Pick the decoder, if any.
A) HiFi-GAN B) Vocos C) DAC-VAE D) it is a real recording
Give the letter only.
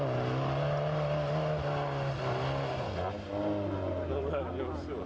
D